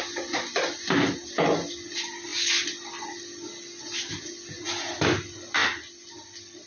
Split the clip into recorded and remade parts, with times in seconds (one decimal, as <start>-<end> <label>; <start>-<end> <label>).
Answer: 0.0-6.7 recorded